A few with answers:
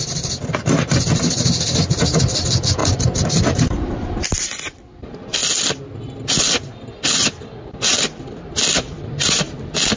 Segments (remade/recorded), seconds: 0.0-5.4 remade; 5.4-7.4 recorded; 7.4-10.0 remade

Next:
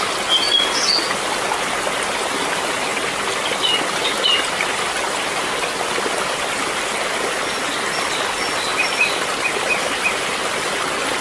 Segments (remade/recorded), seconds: 0.0-11.2 recorded

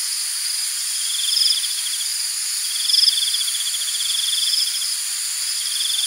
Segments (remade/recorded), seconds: 0.0-6.1 remade

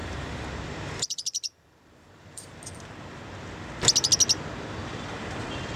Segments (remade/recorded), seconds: 0.0-2.7 remade; 2.7-5.8 recorded